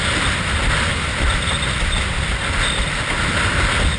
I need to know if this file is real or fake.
real